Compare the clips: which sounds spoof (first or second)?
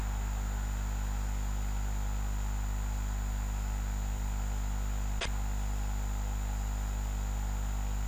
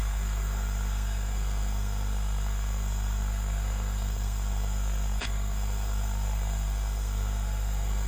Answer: second